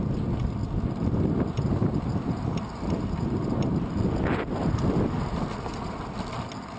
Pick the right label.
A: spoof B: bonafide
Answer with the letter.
B